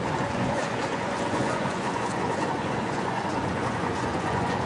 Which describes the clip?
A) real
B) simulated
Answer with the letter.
B